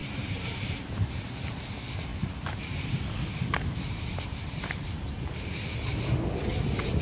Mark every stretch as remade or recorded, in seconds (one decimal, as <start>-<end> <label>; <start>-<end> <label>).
0.0-1.7 remade; 1.7-2.1 recorded; 2.1-5.6 remade; 5.6-7.0 recorded

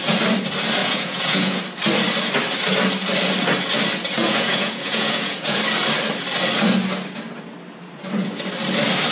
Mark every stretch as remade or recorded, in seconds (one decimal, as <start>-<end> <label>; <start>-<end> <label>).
0.0-0.8 recorded; 0.8-1.6 remade; 1.6-4.2 recorded; 4.2-5.6 remade; 5.6-9.1 recorded